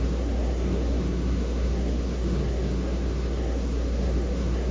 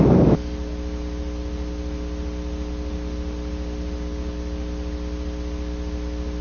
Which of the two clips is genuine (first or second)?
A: second